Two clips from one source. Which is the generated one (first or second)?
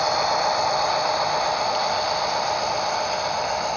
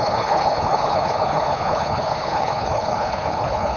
second